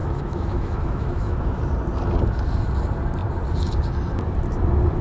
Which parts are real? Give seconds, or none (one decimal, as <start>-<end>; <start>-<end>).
1.6-5.0